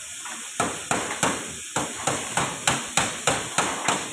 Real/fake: real